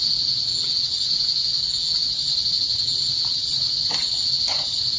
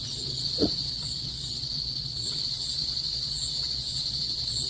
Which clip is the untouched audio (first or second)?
first